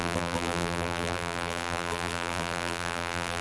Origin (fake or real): fake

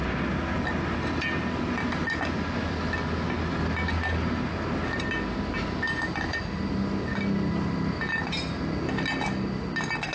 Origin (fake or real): real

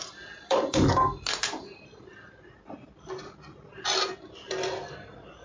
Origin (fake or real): real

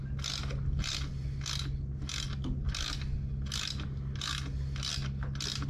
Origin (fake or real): real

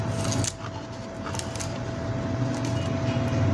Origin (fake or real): real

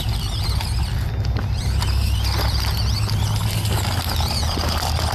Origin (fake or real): real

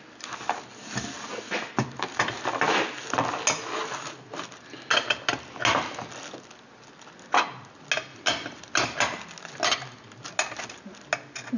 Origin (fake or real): real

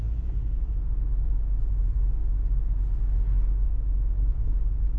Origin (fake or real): real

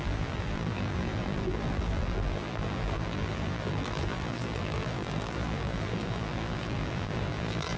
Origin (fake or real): fake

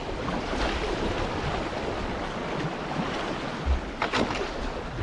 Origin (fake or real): real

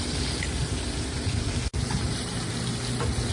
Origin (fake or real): fake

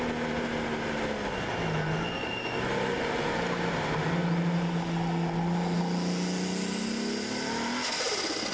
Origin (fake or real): real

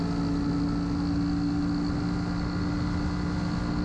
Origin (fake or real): real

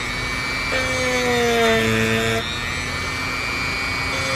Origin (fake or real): real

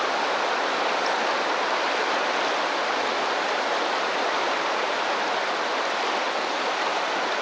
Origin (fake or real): real